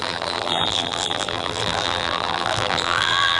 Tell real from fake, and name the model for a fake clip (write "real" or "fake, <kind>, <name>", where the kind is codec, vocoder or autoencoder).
fake, vocoder, BigVGAN v2